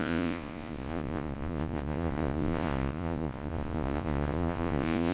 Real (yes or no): no